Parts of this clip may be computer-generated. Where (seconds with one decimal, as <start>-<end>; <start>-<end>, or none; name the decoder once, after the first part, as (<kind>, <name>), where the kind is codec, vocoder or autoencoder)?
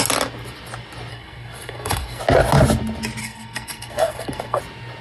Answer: 1.1-2.2 (codec, SNAC); 3.2-4.6